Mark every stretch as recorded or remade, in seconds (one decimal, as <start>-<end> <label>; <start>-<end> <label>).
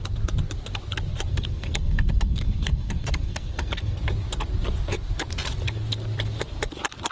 0.0-1.3 recorded; 1.3-4.0 remade; 4.0-7.1 recorded